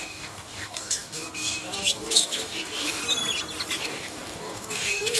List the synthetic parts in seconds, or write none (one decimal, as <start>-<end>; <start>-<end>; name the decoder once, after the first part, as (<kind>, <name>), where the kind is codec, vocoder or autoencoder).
0.0-3.0 (codec, DAC); 3.8-5.2